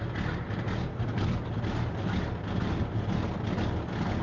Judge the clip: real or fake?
real